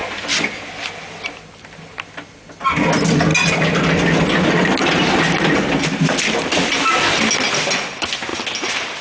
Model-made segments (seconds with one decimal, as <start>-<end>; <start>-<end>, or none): none